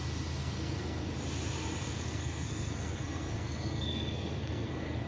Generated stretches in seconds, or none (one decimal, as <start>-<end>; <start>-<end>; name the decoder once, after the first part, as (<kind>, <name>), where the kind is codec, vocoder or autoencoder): 0.4-1.1 (codec, SNAC); 1.8-5.1